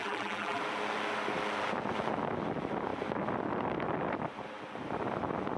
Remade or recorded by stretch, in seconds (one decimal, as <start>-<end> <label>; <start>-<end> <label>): 0.0-0.6 remade; 0.6-5.6 recorded